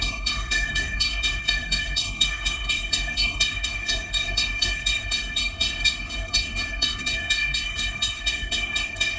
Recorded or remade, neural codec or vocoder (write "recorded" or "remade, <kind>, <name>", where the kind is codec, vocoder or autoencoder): remade, codec, SNAC